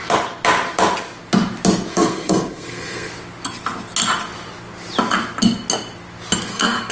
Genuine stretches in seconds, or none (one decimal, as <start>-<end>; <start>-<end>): 0.0-1.9; 3.1-6.4